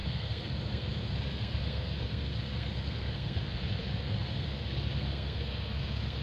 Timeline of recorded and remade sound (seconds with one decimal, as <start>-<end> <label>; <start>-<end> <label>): 0.0-6.2 remade